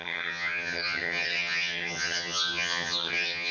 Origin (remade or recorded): remade